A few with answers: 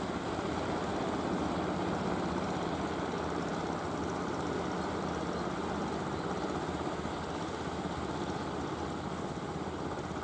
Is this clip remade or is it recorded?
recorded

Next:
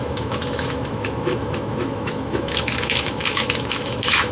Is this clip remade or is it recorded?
remade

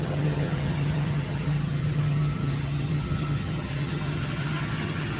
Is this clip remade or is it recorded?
remade